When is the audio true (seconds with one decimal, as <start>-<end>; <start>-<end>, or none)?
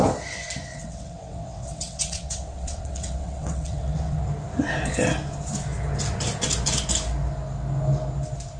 0.0-0.7; 4.2-8.6